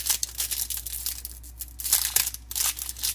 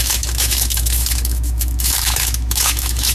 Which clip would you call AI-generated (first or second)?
second